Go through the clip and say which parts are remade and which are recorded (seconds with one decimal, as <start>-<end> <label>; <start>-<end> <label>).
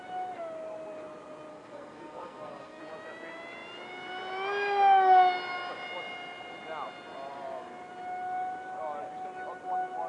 0.0-1.5 recorded; 1.5-2.8 remade; 2.8-10.1 recorded